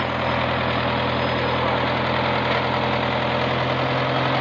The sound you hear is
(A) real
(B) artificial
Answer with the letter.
A